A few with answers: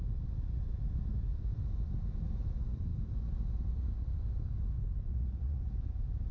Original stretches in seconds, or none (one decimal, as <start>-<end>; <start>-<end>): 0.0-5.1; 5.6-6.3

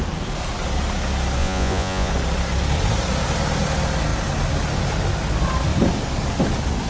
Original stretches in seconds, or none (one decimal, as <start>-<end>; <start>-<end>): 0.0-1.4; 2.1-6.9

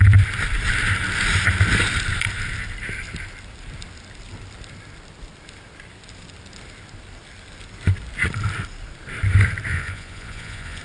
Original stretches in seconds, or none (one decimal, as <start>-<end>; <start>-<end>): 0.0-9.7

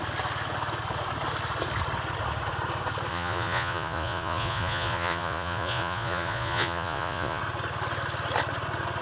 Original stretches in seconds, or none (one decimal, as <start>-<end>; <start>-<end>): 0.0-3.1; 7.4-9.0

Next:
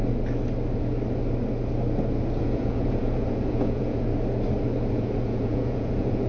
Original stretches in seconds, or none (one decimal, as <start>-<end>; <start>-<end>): 0.0-2.4; 4.1-4.9

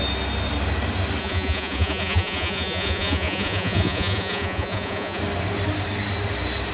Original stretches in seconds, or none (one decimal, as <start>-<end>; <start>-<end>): 0.0-1.2; 5.2-6.7